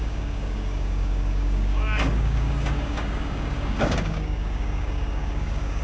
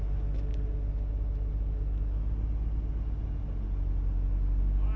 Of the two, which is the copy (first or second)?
first